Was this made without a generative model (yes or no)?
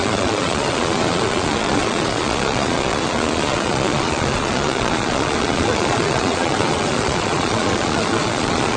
no